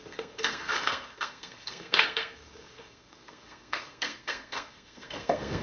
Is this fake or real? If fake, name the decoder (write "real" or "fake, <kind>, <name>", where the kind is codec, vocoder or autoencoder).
fake, codec, SNAC